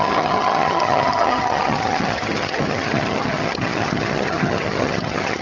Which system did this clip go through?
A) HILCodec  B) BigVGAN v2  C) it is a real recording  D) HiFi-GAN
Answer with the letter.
D